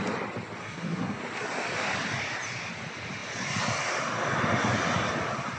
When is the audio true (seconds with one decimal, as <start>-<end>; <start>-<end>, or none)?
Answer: 0.0-0.6; 1.2-5.6